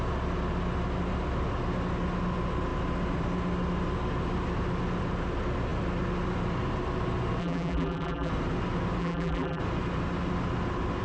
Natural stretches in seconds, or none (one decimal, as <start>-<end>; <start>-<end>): 0.0-7.4; 8.3-9.0; 9.6-11.0